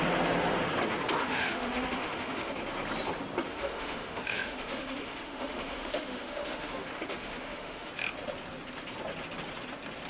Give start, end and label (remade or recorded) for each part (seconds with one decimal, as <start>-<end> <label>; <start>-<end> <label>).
0.0-1.2 recorded; 1.2-2.5 remade; 2.5-3.5 recorded; 3.5-7.9 remade; 7.9-10.1 recorded